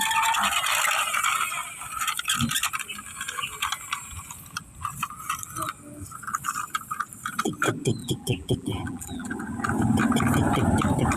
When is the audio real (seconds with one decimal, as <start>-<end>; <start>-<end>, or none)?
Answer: 0.0-8.0; 9.3-11.2